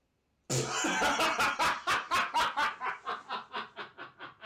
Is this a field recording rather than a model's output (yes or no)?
yes